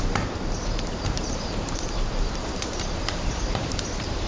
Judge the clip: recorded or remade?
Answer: remade